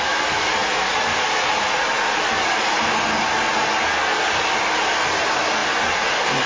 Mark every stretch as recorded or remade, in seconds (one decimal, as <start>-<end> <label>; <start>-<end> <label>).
0.0-6.5 recorded